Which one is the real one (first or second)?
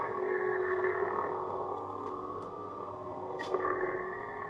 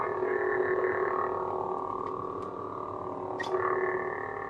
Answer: second